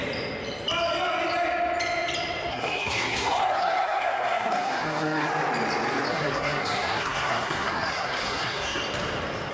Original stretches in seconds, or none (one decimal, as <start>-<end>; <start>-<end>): 0.0-2.5; 5.3-6.1; 8.8-9.5